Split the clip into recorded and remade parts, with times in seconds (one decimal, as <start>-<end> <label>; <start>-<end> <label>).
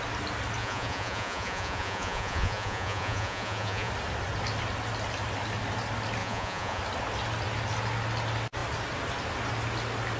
0.0-0.6 recorded; 0.6-3.9 remade; 3.9-6.2 recorded; 6.2-6.8 remade; 6.8-10.2 recorded